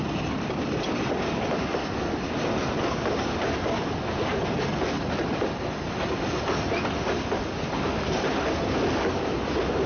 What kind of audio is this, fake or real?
real